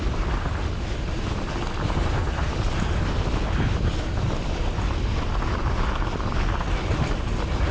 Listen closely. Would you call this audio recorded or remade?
recorded